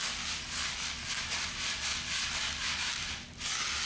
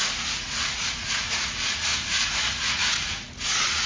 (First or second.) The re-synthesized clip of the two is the second